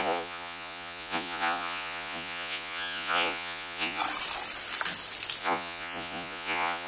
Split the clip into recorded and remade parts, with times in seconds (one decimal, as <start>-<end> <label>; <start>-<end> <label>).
0.0-4.0 remade; 4.0-5.4 recorded; 5.4-6.9 remade

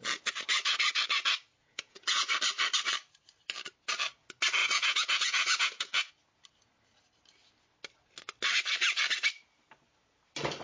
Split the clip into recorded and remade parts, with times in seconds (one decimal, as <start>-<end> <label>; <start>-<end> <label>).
0.0-1.6 recorded; 1.6-2.3 remade; 2.3-4.6 recorded; 4.6-6.1 remade; 6.1-10.6 recorded

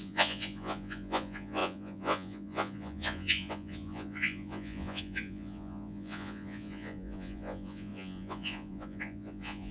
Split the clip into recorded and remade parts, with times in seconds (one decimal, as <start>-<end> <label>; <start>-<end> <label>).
0.0-9.7 remade

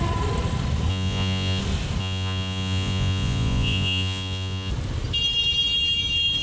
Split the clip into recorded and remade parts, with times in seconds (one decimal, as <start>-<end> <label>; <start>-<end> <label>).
0.0-0.9 recorded; 0.9-1.6 remade; 1.6-2.0 recorded; 2.0-4.7 remade; 4.7-6.4 recorded

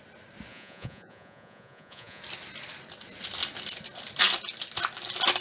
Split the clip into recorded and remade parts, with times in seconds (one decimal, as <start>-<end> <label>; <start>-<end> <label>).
0.0-0.5 recorded; 0.5-2.2 remade; 2.2-5.4 recorded

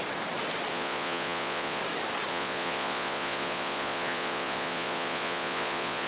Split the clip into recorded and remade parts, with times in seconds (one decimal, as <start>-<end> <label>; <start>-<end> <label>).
0.0-0.7 recorded; 0.7-1.8 remade; 1.8-2.3 recorded; 2.3-6.1 remade

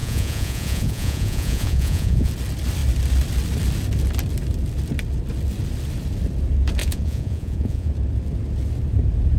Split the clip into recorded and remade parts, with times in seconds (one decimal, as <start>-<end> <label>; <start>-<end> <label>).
0.0-2.3 remade; 2.3-6.8 recorded; 6.8-7.9 remade; 7.9-9.4 recorded

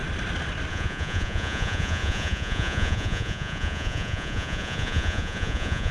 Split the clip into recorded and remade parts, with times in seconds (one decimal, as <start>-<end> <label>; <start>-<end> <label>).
0.0-0.7 recorded; 0.7-5.9 remade